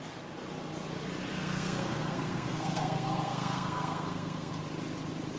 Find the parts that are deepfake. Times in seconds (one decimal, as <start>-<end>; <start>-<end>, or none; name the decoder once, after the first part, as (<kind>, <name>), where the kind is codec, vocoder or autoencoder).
1.3-4.5 (codec, SNAC)